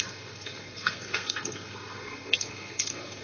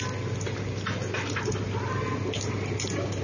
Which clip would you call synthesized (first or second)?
first